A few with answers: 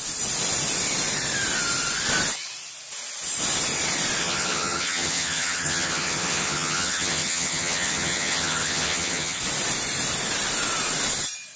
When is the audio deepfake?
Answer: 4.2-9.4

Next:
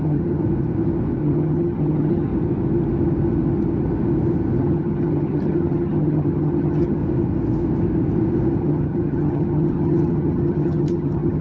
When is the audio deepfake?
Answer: 0.0-0.4; 1.2-2.3; 4.6-7.0; 8.6-11.4

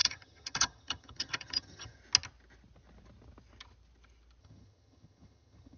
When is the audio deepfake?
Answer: 0.0-2.0; 4.4-5.8

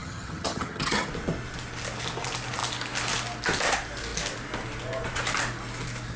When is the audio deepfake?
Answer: 0.0-1.1

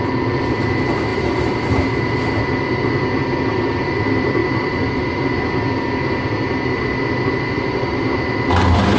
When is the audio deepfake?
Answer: none